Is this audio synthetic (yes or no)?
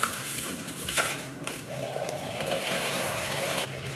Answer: yes